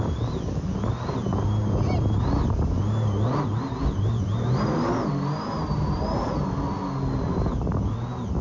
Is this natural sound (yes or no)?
yes